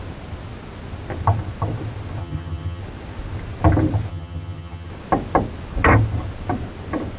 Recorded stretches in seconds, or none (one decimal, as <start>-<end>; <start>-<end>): 0.0-2.2; 2.8-4.1; 4.9-7.2